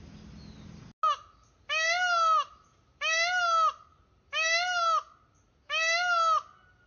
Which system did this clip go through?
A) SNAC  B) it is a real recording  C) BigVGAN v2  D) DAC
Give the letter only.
B